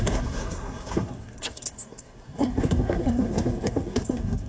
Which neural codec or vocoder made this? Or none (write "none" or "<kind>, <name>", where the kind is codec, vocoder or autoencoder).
codec, SNAC